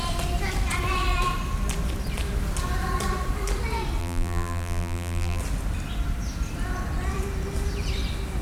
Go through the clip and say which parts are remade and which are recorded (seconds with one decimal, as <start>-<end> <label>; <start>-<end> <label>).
0.0-4.0 recorded; 4.0-5.4 remade; 5.4-8.4 recorded